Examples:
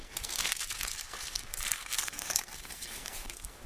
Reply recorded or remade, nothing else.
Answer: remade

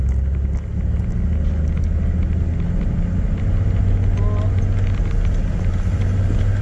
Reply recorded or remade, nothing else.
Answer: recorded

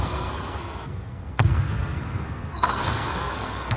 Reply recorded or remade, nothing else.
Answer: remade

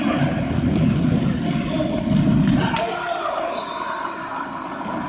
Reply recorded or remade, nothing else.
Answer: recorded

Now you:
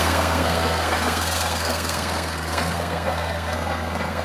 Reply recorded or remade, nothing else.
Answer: remade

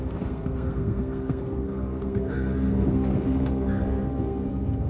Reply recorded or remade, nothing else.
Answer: remade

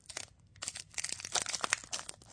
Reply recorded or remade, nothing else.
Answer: recorded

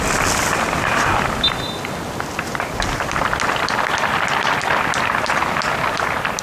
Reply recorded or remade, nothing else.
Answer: recorded